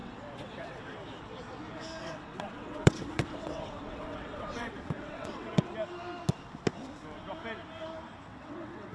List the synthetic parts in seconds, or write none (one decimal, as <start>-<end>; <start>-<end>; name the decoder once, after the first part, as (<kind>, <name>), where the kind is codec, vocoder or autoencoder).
0.0-0.8 (vocoder, WaveNeXt); 2.0-5.7; 8.3-8.9